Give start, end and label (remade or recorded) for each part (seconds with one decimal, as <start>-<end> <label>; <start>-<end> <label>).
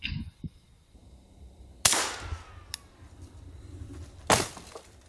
0.0-5.1 recorded